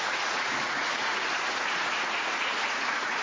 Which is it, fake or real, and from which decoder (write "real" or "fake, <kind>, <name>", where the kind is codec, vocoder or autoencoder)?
fake, vocoder, Vocos